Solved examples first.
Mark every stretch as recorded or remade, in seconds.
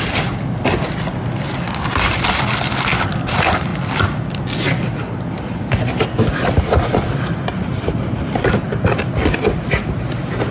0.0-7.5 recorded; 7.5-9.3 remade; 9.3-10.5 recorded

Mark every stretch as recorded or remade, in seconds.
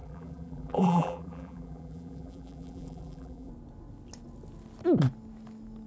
0.0-3.5 remade; 3.5-5.9 recorded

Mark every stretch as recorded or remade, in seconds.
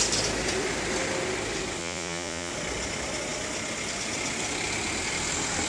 0.0-1.8 recorded; 1.8-2.5 remade; 2.5-5.7 recorded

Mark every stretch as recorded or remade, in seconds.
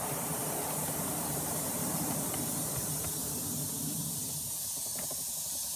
0.0-0.4 recorded; 0.4-2.2 remade; 2.2-3.2 recorded; 3.2-4.4 remade; 4.4-4.9 recorded; 4.9-5.8 remade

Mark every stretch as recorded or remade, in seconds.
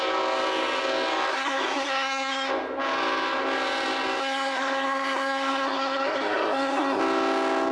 0.0-1.3 recorded; 1.3-2.5 remade; 2.5-4.2 recorded; 4.2-7.0 remade; 7.0-7.7 recorded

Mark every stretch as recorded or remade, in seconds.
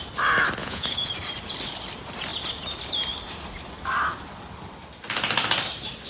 0.0-0.6 recorded; 0.6-1.1 remade; 1.1-6.1 recorded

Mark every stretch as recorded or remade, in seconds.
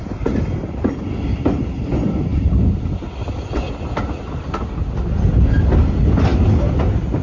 0.0-7.2 recorded